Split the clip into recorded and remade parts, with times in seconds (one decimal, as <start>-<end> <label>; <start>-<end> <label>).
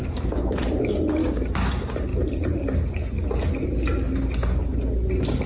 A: 0.0-1.2 recorded; 1.2-1.7 remade; 1.7-5.5 recorded